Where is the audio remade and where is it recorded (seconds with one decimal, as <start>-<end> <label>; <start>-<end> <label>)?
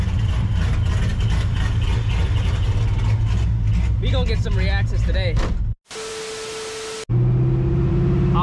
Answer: 0.0-8.4 recorded